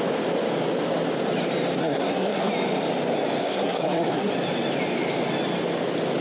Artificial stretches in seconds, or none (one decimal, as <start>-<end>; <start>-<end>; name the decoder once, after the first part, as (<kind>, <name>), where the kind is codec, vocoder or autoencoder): 1.8-2.5 (codec, SNAC); 3.4-4.3